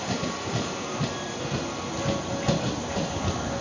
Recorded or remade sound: recorded